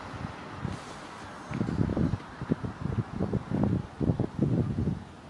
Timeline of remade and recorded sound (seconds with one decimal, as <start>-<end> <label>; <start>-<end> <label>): 0.0-1.9 recorded; 1.9-3.6 remade; 3.6-5.3 recorded